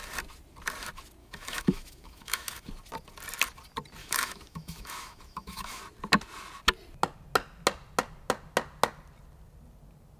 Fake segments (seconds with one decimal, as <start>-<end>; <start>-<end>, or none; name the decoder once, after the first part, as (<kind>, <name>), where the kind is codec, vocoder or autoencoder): 1.2-2.7 (autoencoder, DAC-VAE); 4.0-5.8